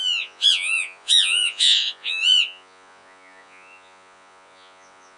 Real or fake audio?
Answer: fake